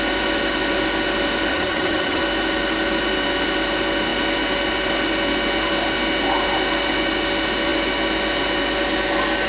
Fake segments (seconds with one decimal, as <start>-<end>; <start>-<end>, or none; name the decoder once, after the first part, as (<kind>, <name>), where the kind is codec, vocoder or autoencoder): 1.5-2.2 (vocoder, HiFi-GAN)